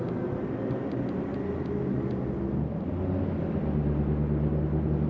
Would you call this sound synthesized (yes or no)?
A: no